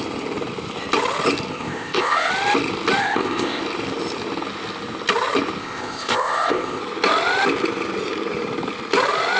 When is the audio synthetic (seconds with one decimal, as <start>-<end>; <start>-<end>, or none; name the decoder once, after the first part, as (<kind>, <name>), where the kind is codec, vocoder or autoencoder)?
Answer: 1.5-2.3 (codec, ZipCodec); 3.0-3.6; 5.6-6.8

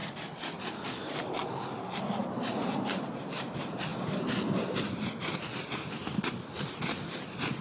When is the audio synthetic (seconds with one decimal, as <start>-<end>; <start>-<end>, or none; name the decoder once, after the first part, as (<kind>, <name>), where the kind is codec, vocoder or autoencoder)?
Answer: 0.6-1.4 (vocoder, BigVGAN v2); 2.2-3.9

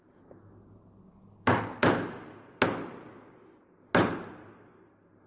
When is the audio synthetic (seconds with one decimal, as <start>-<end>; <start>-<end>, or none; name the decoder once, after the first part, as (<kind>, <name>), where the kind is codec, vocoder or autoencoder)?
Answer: none

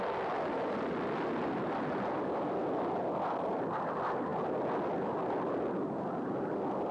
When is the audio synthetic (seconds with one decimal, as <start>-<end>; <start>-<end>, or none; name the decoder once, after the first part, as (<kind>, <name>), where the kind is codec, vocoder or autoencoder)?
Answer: none

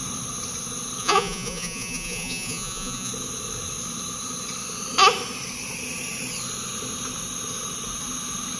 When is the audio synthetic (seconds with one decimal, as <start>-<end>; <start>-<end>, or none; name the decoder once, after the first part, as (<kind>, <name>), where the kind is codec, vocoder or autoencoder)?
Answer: 1.0-3.1 (vocoder, Vocos)

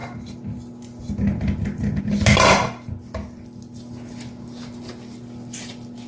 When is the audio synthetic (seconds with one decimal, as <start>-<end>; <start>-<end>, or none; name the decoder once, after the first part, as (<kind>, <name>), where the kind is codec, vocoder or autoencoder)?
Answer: none